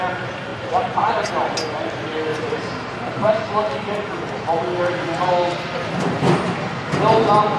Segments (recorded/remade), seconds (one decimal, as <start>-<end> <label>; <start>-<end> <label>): 0.0-0.5 recorded; 0.5-1.3 remade; 1.3-2.3 recorded; 2.3-3.3 remade; 3.3-7.6 recorded